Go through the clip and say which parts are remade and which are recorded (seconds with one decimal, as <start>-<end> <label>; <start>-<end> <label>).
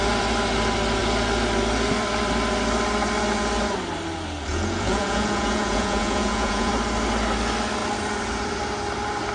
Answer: 0.0-4.5 recorded; 4.5-6.7 remade; 6.7-9.3 recorded